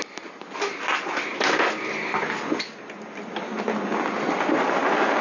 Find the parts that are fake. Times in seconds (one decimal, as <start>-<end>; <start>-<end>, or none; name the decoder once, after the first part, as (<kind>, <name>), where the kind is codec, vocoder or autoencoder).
none